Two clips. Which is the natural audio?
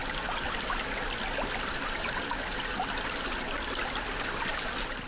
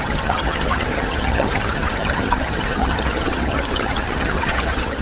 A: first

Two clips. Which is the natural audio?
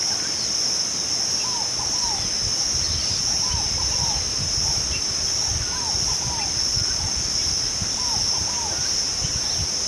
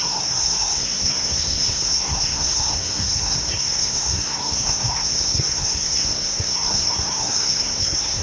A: first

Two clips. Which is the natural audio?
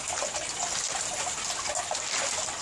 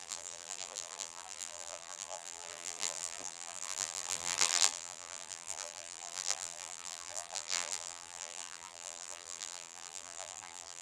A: first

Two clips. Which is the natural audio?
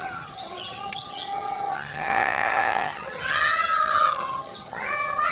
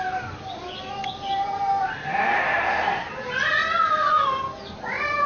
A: second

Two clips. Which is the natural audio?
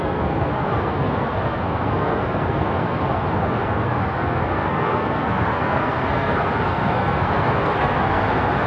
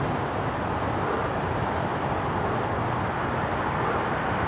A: second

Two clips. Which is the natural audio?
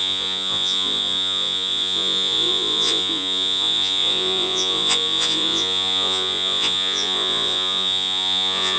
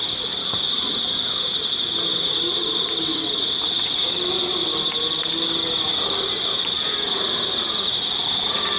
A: second